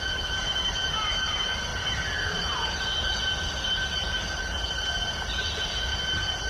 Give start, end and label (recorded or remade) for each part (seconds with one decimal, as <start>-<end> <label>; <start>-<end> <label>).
0.0-6.5 recorded